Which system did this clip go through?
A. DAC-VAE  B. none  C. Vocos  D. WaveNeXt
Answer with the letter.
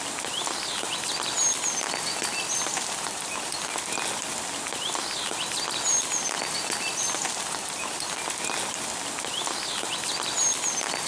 B